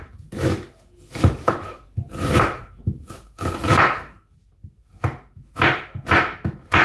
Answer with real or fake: fake